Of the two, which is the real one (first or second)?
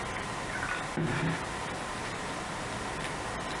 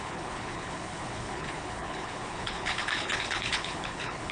first